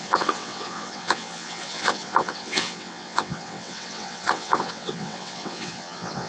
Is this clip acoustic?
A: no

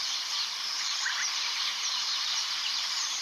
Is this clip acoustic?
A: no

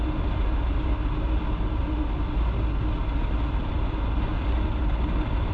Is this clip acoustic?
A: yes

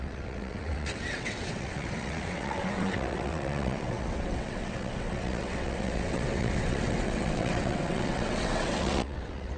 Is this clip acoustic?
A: no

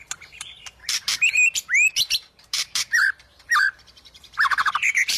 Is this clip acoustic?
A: no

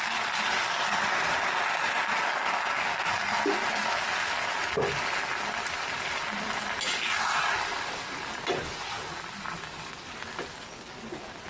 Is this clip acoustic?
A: yes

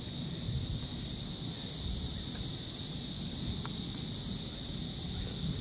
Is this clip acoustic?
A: yes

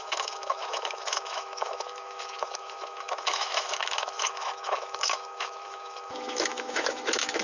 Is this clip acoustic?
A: no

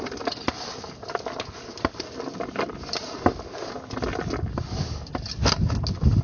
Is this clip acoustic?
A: yes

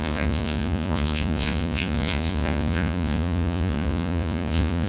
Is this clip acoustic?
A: no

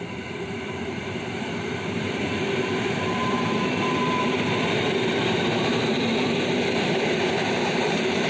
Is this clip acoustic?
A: no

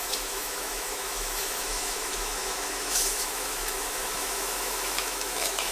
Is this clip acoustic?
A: no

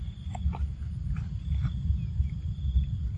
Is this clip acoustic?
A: yes